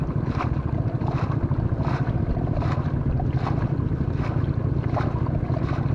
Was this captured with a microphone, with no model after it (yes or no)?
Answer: yes